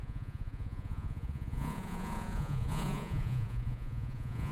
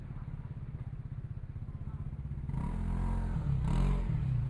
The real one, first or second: second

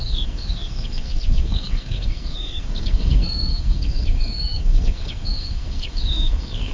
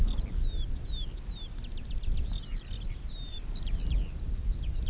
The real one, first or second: second